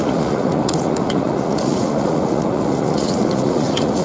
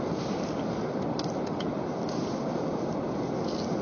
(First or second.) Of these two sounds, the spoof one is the first